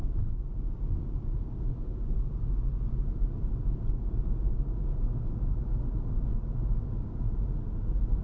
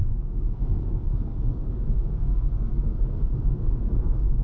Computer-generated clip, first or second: second